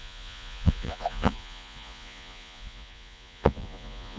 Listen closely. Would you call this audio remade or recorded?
remade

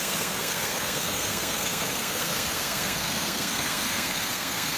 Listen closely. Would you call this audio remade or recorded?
remade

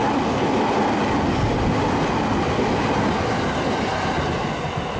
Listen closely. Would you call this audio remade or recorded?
recorded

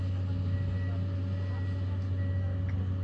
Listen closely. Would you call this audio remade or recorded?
recorded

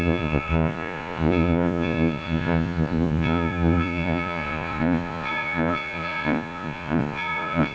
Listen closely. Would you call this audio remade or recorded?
remade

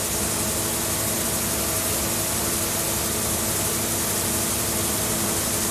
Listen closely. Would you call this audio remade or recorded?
recorded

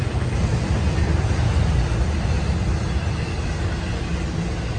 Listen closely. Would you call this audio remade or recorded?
recorded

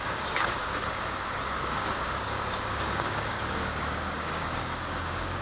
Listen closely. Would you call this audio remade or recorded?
remade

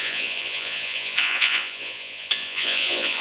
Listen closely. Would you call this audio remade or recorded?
remade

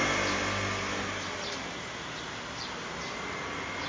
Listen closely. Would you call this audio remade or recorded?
recorded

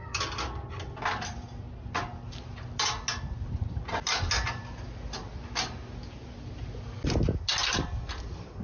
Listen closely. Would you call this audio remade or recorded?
recorded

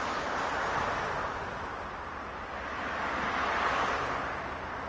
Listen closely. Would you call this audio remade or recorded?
recorded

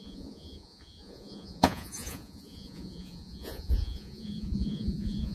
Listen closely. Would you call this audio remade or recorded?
remade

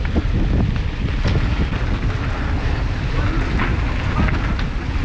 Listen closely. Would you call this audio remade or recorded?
recorded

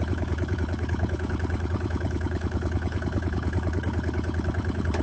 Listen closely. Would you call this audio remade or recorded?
remade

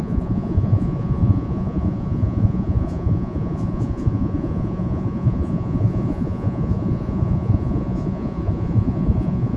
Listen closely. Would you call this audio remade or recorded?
remade